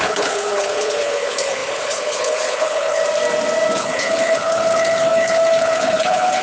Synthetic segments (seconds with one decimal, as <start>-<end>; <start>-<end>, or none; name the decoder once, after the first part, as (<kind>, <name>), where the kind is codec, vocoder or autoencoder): 0.0-3.0 (codec, HILCodec); 3.8-6.4